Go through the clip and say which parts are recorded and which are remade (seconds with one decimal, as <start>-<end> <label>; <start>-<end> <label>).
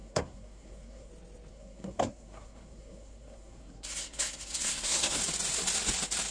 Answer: 0.0-1.1 remade; 1.1-1.5 recorded; 1.5-5.2 remade; 5.2-6.3 recorded